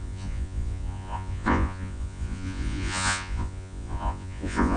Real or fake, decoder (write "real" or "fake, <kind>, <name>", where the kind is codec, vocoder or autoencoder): fake, vocoder, Vocos